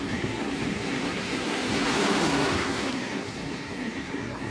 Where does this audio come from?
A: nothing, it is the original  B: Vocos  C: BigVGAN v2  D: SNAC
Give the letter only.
D